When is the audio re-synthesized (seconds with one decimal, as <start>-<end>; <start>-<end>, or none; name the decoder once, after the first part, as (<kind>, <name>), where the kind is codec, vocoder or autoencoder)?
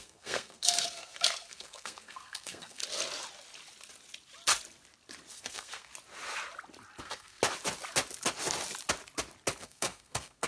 0.0-2.8 (codec, SNAC); 5.3-5.9; 7.0-7.4; 9.6-10.5